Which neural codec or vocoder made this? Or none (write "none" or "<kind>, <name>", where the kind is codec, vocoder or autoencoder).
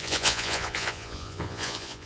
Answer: vocoder, Vocos